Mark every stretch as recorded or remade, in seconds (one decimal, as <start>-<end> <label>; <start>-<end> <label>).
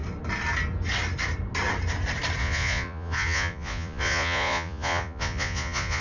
0.0-2.4 recorded; 2.4-6.0 remade